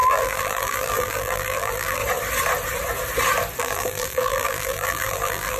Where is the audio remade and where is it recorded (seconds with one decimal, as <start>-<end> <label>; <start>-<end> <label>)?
0.0-2.0 remade; 2.0-3.6 recorded; 3.6-5.6 remade